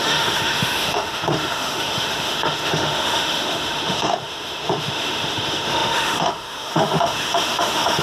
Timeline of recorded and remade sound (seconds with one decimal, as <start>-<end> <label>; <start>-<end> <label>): 0.0-8.0 remade